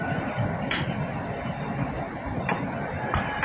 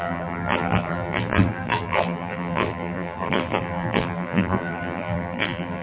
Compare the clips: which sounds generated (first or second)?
second